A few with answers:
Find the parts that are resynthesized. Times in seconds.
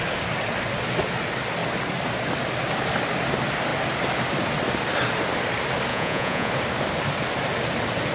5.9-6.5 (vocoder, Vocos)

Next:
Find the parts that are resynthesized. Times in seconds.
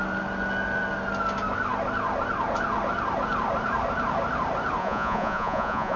4.8-6.0 (vocoder, Vocos)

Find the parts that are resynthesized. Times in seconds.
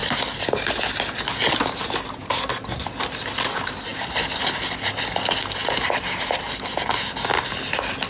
none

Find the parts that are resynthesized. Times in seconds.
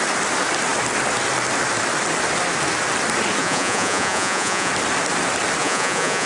3.4-4.7 (vocoder, Vocos); 5.6-6.3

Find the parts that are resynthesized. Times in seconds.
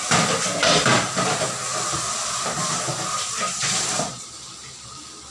none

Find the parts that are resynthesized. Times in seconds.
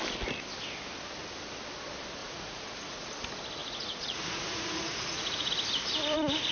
2.2-3.1 (vocoder, Vocos); 3.6-5.5